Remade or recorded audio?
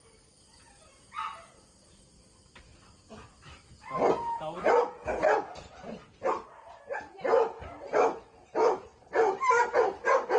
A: recorded